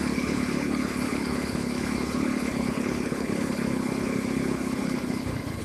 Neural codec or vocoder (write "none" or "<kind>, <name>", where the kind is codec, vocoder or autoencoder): codec, HILCodec